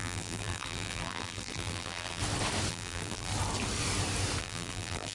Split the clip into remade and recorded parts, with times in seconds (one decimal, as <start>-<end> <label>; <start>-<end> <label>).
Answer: 0.0-2.2 remade; 2.2-2.7 recorded; 2.7-3.3 remade; 3.3-4.4 recorded; 4.4-5.1 remade